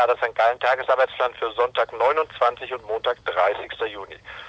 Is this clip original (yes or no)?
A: yes